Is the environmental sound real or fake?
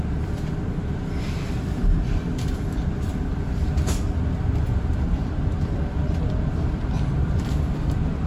fake